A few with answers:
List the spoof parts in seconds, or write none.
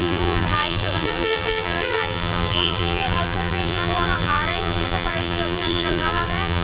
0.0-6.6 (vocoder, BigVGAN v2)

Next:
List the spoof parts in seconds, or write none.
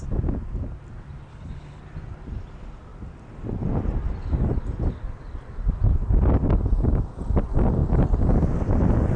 1.3-1.8 (codec, HILCodec)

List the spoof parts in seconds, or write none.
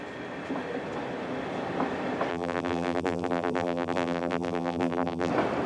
2.3-5.3 (vocoder, BigVGAN v2)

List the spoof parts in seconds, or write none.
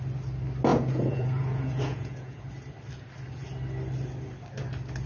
0.7-2.4 (vocoder, Vocos)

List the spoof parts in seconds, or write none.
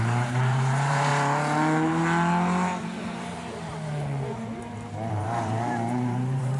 0.0-1.1 (vocoder, BigVGAN v2); 5.1-6.6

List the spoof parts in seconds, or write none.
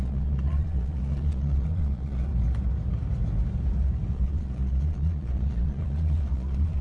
0.0-2.3 (vocoder, Vocos); 4.1-6.8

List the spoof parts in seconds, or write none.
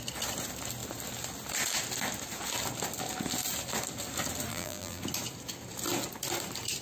4.5-5.0 (vocoder, BigVGAN v2)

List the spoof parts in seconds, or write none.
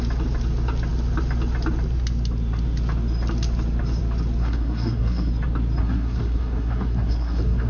4.4-5.3 (codec, SNAC); 5.8-7.7